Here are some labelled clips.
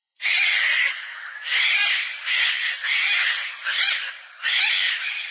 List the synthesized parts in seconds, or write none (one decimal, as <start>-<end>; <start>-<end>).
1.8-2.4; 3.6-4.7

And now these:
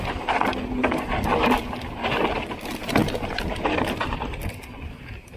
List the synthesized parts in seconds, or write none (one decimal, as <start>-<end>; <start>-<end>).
3.0-4.5

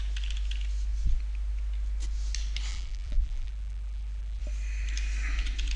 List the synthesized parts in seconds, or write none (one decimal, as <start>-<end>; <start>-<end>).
2.7-4.4

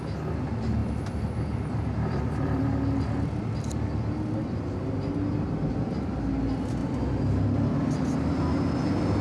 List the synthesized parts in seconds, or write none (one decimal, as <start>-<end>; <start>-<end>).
0.8-2.6

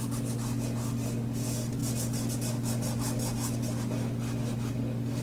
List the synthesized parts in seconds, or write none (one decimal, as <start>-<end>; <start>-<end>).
none

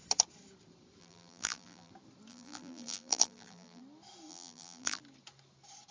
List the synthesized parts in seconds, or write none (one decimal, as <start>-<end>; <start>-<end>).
1.0-1.9; 2.3-3.8; 4.3-5.0

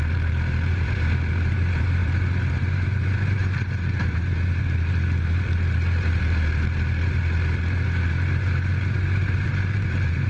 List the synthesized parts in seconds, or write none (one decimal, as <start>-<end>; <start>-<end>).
0.0-10.3

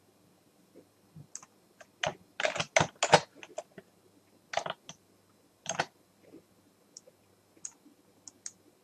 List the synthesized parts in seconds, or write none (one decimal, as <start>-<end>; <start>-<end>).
none